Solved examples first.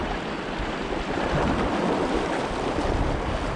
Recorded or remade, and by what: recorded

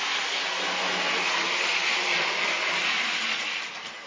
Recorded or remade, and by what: recorded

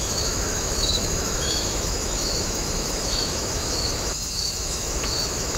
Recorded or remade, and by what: remade, autoencoder, DAC-VAE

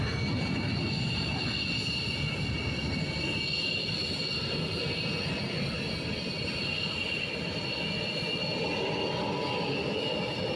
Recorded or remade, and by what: recorded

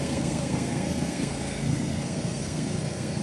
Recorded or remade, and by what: remade, codec, SNAC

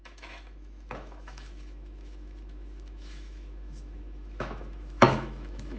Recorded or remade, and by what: remade, autoencoder, DAC-VAE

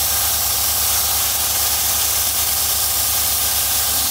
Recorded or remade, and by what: recorded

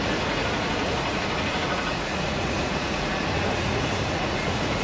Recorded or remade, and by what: remade, vocoder, Vocos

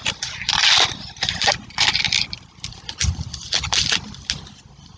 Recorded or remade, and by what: recorded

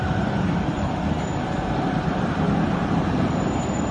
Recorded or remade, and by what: remade, vocoder, BigVGAN v2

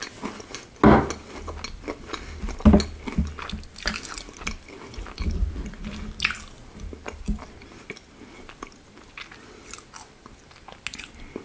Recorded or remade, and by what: recorded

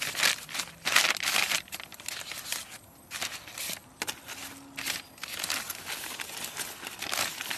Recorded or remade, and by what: recorded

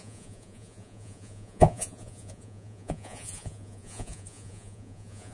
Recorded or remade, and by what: remade, vocoder, Vocos